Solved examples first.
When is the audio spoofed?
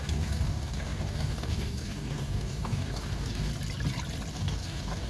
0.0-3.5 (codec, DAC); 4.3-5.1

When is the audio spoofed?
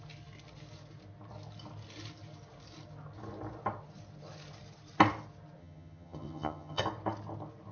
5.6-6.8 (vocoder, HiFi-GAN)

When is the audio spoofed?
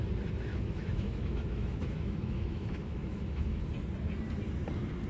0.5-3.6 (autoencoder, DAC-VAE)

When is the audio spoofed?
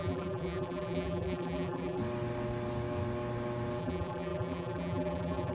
0.0-2.0 (vocoder, BigVGAN v2); 3.8-5.5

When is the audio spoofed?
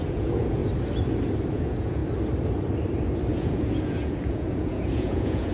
0.0-0.6 (vocoder, Vocos); 1.5-2.0; 3.3-5.5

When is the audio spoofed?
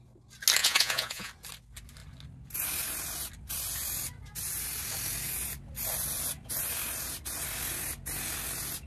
0.6-1.3 (vocoder, Vocos)